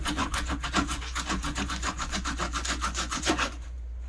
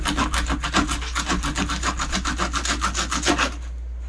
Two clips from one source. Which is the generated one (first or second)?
first